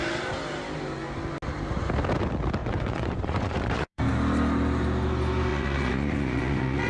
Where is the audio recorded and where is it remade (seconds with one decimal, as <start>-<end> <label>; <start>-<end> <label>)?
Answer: 0.0-2.6 recorded; 2.6-4.0 remade; 4.0-5.5 recorded; 5.5-6.9 remade